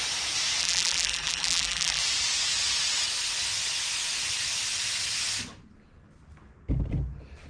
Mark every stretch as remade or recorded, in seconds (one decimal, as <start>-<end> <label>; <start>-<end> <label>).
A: 0.0-0.6 recorded; 0.6-2.0 remade; 2.0-7.5 recorded